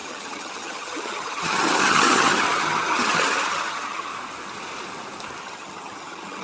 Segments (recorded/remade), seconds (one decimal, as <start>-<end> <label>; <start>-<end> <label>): 0.0-4.1 remade; 4.1-5.4 recorded; 5.4-6.4 remade